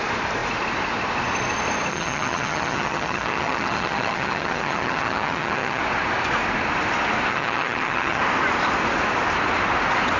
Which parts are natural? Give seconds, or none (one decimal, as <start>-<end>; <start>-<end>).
0.0-1.9; 5.8-7.3; 8.2-10.2